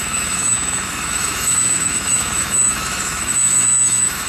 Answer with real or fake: fake